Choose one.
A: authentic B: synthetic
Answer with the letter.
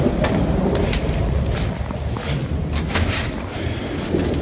A